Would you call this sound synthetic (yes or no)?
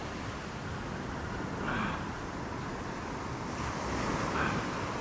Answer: no